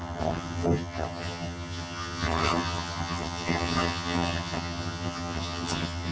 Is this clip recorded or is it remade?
remade